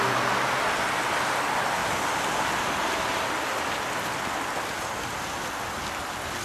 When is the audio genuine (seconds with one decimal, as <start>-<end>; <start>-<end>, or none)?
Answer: 0.0-6.4